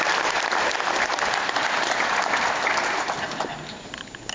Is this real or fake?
real